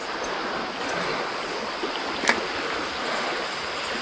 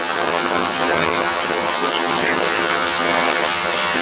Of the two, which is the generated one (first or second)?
second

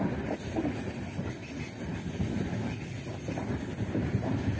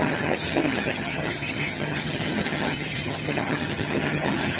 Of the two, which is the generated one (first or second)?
second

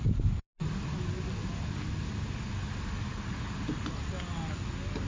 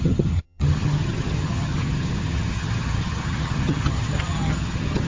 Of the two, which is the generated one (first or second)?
second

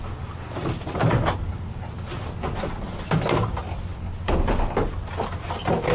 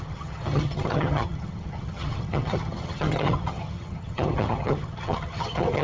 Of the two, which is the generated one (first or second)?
second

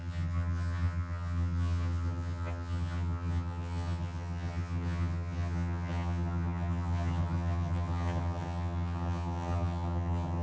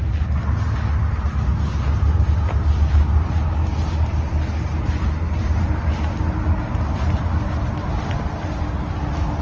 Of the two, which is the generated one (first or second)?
first